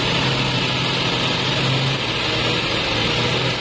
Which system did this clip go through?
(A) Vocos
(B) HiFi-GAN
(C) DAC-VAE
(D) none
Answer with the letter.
D